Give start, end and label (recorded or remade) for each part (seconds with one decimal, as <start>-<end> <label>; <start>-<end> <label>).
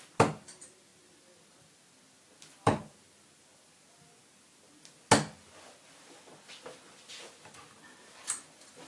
0.0-8.9 recorded